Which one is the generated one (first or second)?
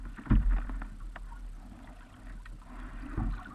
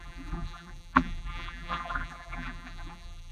second